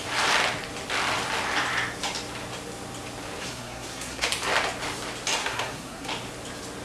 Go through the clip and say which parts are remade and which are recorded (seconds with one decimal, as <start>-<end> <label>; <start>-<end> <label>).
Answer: 0.0-3.4 recorded; 3.4-4.3 remade; 4.3-5.4 recorded; 5.4-6.1 remade; 6.1-6.8 recorded